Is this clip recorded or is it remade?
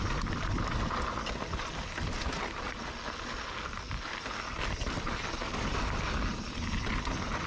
recorded